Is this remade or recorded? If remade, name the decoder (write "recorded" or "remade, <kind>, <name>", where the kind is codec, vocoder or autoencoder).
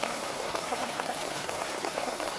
remade, codec, SNAC